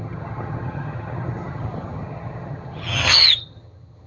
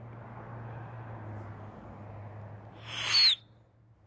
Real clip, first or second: second